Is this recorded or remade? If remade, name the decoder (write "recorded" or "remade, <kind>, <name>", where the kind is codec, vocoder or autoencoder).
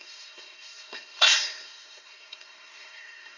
remade, codec, SNAC